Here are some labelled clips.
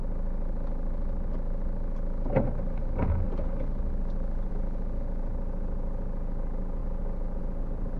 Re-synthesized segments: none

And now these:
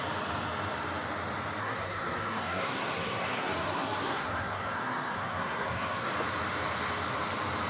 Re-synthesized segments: 1.6-6.1 (codec, SNAC)

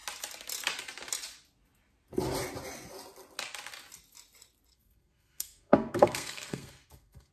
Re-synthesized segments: 4.7-7.3 (codec, SNAC)

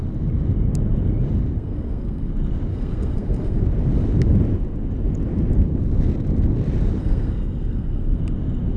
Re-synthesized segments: 1.6-2.3 (codec, SNAC); 2.7-3.6; 7.0-8.2

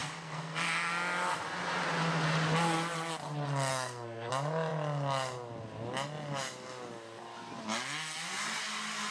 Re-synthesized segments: 0.0-0.9 (codec, SNAC); 3.7-4.3